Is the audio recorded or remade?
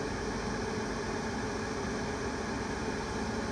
recorded